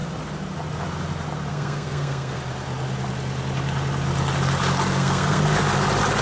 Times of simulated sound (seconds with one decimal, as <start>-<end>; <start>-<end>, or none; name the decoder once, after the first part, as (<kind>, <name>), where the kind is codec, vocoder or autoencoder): 1.5-2.4 (codec, SNAC); 4.9-5.4